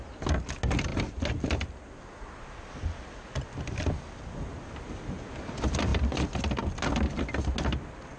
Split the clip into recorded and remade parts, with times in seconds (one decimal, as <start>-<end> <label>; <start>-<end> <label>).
0.0-8.2 recorded